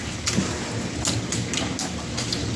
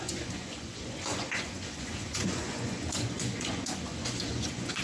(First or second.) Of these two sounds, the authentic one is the first